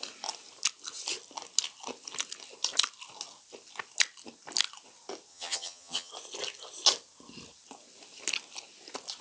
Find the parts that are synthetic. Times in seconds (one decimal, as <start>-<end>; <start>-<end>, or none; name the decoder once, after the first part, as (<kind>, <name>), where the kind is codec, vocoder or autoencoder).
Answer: 5.3-6.1 (vocoder, HiFi-GAN)